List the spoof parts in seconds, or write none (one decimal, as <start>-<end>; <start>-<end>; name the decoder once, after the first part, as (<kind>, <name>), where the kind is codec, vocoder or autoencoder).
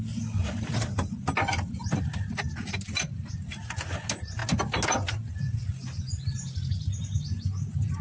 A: none